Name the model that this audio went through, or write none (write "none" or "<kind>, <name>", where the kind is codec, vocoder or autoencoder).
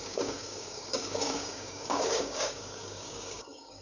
codec, DAC